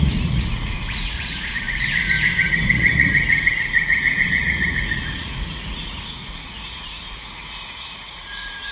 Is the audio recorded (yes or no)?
no